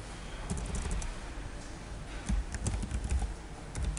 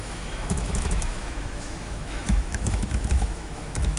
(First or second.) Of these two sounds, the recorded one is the first